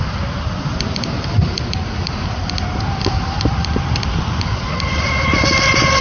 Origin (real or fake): real